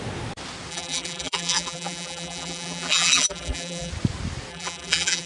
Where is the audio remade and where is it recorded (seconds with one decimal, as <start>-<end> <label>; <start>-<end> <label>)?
0.0-0.7 recorded; 0.7-3.9 remade; 3.9-4.5 recorded; 4.5-5.3 remade